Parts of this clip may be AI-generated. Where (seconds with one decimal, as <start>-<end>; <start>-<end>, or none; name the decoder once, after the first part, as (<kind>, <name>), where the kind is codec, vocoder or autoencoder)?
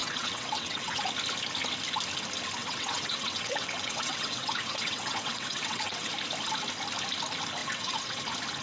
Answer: 0.0-1.1 (vocoder, WaveNeXt); 2.6-6.1; 7.6-8.2